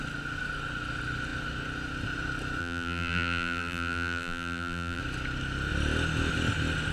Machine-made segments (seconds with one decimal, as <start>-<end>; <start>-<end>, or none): 2.6-5.0